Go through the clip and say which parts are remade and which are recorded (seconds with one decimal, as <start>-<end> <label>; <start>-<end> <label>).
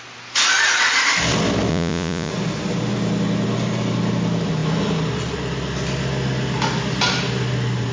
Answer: 0.0-1.7 recorded; 1.7-2.3 remade; 2.3-7.9 recorded